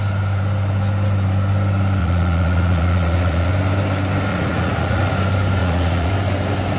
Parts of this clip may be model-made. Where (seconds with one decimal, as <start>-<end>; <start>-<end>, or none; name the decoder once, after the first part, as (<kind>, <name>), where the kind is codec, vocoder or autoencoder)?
2.0-3.5 (vocoder, Vocos); 4.3-5.1; 5.6-6.1